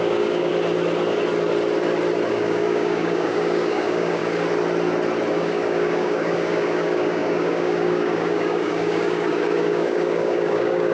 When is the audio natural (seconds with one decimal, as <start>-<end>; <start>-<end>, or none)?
0.5-2.3; 4.2-5.3